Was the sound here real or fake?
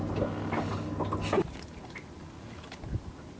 real